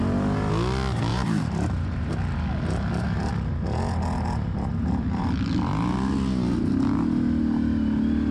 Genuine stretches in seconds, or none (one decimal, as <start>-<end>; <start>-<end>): 0.0-1.1; 2.1-8.3